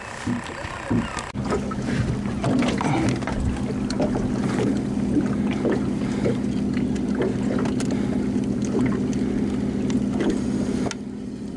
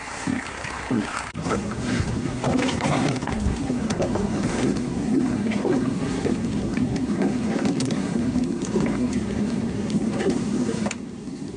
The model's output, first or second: second